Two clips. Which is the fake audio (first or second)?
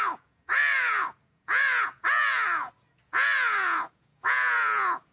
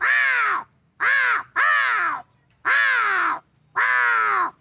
first